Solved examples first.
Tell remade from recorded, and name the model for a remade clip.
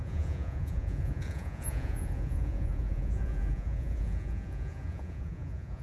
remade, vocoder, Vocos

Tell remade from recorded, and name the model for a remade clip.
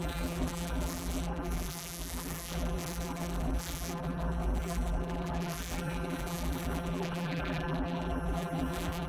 remade, vocoder, BigVGAN v2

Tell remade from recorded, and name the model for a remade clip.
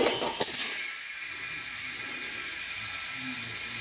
recorded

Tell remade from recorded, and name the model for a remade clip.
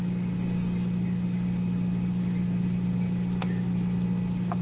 recorded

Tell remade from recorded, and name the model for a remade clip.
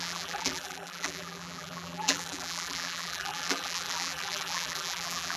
remade, vocoder, BigVGAN v2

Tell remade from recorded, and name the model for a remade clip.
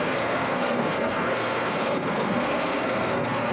remade, codec, SNAC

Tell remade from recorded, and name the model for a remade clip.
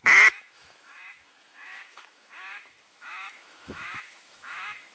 remade, autoencoder, DAC-VAE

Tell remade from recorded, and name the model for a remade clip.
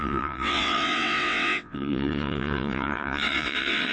remade, vocoder, WaveNeXt